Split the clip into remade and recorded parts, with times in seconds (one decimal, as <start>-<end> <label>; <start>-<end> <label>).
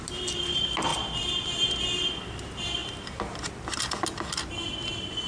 0.0-5.3 recorded